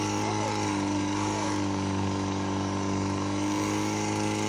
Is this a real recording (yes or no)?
no